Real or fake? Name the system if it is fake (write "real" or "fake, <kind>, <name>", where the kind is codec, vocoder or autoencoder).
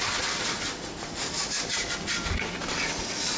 real